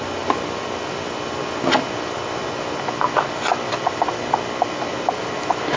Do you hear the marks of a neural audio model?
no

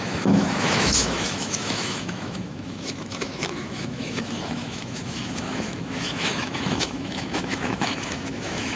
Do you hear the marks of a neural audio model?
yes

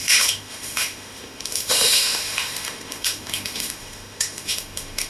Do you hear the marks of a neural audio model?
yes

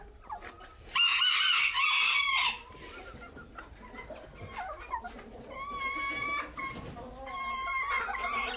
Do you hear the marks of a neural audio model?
no